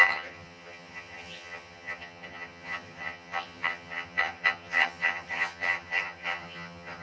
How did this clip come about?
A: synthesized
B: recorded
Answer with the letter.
A